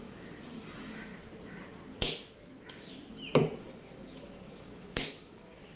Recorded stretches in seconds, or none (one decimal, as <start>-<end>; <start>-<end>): 1.1-3.6